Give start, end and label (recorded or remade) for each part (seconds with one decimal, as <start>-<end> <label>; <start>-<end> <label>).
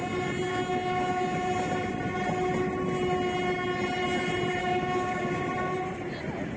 0.0-4.6 recorded; 4.6-5.3 remade; 5.3-6.6 recorded